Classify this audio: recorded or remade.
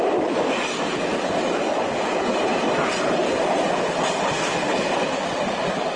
recorded